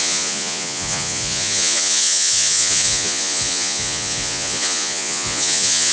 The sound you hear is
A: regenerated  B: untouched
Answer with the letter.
A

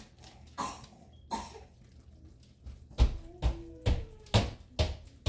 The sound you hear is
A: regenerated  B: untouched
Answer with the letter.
B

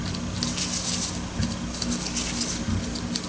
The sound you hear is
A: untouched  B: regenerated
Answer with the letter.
A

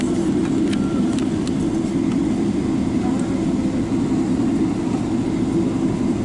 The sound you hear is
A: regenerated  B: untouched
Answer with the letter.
B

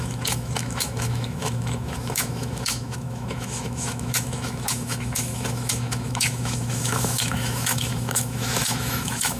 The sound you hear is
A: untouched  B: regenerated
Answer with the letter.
B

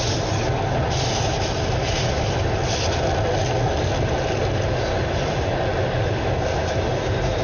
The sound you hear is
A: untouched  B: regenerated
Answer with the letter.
A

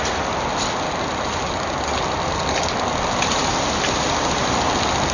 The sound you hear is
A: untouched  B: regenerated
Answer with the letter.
A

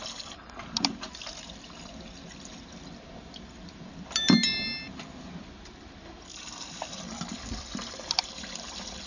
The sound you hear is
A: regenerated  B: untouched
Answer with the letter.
A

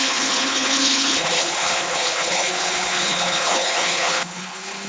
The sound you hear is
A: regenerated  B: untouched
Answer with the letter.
A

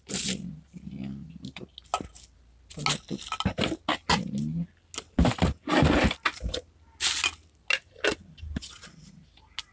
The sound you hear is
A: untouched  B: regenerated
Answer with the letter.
A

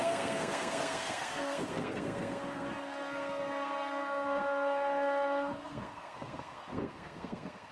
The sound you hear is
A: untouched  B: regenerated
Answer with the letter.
B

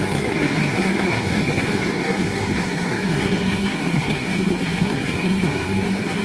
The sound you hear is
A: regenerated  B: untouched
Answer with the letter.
A